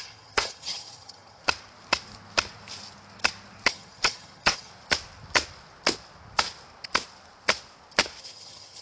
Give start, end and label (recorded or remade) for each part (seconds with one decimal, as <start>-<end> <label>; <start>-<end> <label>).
0.0-1.4 remade; 1.4-3.7 recorded; 3.7-4.7 remade; 4.7-8.2 recorded; 8.2-8.8 remade